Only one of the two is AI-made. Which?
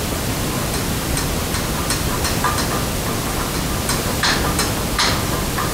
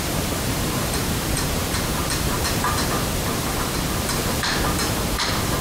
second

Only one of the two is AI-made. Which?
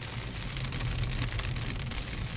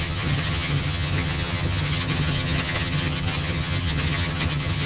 second